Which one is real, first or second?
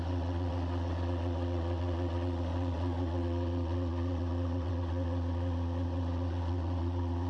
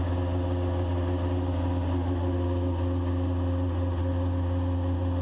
second